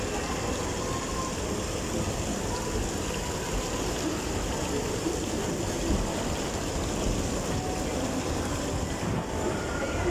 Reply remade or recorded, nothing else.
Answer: recorded